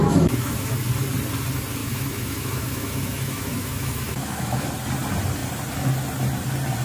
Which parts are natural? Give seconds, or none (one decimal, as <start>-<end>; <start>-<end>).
0.9-1.8; 4.7-6.8